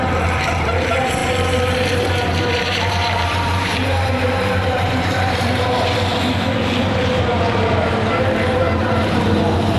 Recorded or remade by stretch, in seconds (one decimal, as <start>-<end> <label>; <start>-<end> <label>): 0.0-6.1 remade; 6.1-6.9 recorded; 6.9-9.8 remade